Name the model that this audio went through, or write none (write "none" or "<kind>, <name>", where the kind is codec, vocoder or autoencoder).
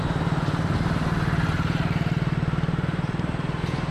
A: vocoder, BigVGAN v2